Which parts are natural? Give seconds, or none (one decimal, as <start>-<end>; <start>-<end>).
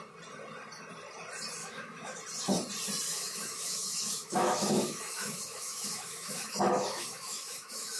0.0-1.6; 2.2-3.1